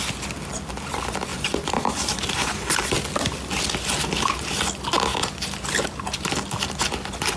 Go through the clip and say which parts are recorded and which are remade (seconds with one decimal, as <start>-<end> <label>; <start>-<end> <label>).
0.0-1.3 recorded; 1.3-3.5 remade; 3.5-7.4 recorded

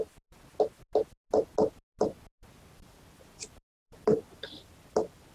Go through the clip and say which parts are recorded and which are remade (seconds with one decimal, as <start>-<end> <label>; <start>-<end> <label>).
0.0-0.5 remade; 0.5-2.7 recorded; 2.7-5.3 remade

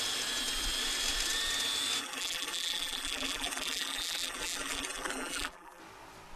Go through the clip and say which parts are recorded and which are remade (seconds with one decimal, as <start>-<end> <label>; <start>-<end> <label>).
0.0-2.0 recorded; 2.0-5.8 remade; 5.8-6.4 recorded

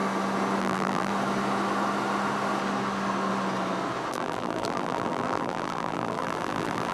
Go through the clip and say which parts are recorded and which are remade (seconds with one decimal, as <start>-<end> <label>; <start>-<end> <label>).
0.0-0.6 recorded; 0.6-1.1 remade; 1.1-4.1 recorded; 4.1-6.9 remade

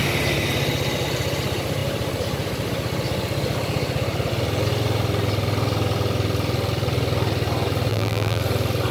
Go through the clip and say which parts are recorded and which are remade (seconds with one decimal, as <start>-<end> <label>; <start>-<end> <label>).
0.0-7.9 recorded; 7.9-8.4 remade; 8.4-8.9 recorded

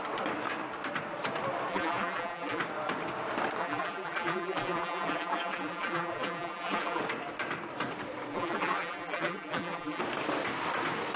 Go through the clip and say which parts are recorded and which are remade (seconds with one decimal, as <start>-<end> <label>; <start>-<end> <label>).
0.0-1.7 recorded; 1.7-2.6 remade; 2.6-3.6 recorded; 3.6-7.0 remade; 7.0-8.3 recorded; 8.3-10.0 remade; 10.0-11.2 recorded

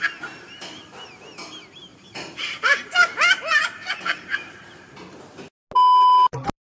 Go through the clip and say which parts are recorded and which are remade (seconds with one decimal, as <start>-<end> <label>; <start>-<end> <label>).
0.0-1.9 recorded; 1.9-5.2 remade; 5.2-6.6 recorded

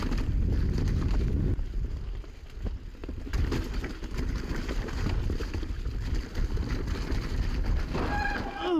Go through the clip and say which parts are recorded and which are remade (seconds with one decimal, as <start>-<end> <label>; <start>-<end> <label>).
0.0-3.0 recorded; 3.0-6.3 remade; 6.3-8.8 recorded